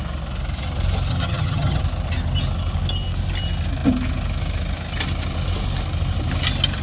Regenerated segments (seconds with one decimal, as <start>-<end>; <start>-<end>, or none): 1.1-1.8